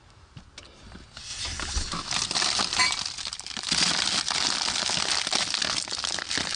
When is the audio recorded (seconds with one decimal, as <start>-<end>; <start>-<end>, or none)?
0.0-6.6